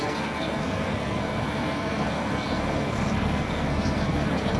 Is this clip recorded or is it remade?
remade